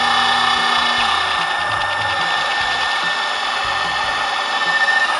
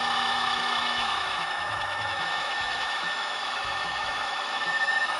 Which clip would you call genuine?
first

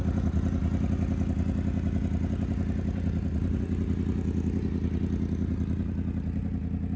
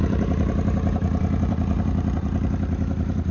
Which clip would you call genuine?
first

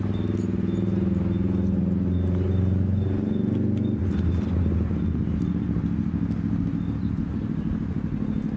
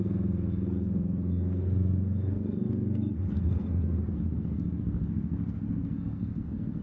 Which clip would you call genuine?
first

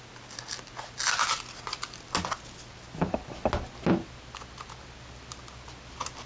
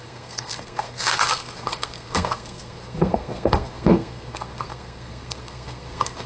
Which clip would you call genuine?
first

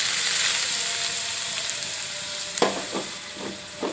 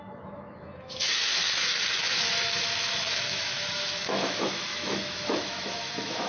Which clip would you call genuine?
first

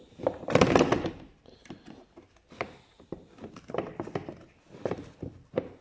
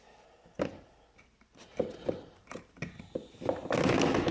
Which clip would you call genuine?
second